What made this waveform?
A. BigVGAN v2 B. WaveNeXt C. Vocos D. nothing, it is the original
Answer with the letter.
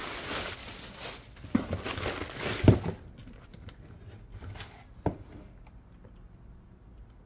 D